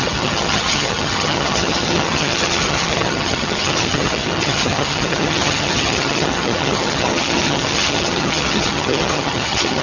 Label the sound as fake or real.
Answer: fake